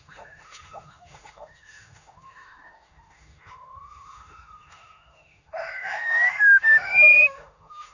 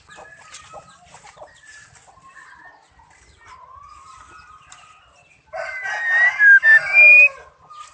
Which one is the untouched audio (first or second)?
second